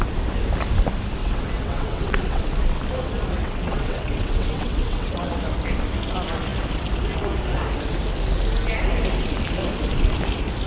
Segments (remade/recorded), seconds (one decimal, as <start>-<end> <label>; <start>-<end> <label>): 0.0-1.2 recorded; 1.2-2.4 remade; 2.4-3.4 recorded; 3.4-5.3 remade; 5.3-10.7 recorded